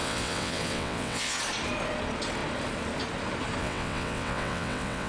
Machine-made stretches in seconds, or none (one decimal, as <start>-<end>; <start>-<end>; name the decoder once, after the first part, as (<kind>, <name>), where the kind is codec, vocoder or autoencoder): 0.0-1.4 (vocoder, WaveNeXt); 3.6-5.1